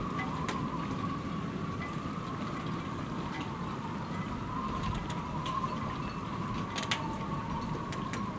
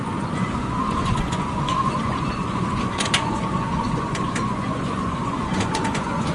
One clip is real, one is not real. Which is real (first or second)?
first